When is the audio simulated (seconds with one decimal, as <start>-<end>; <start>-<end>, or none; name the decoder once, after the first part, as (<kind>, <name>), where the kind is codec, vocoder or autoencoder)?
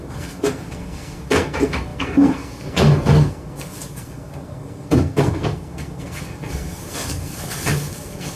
0.0-8.4 (codec, SNAC)